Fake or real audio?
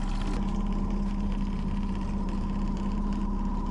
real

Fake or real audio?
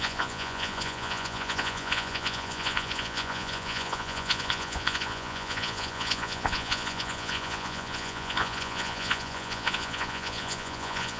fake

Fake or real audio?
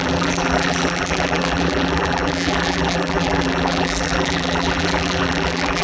fake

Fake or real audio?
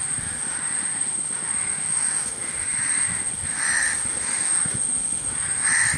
fake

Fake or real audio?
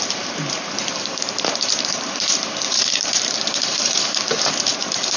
fake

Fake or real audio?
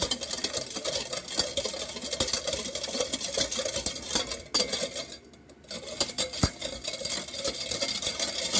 real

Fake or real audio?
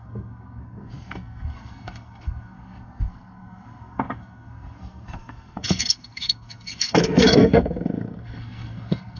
fake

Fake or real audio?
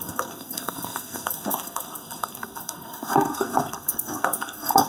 fake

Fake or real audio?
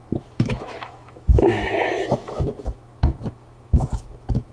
fake